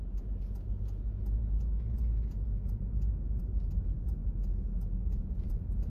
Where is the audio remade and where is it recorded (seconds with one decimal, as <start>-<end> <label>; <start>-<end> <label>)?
0.0-4.2 remade; 4.2-5.0 recorded; 5.0-5.9 remade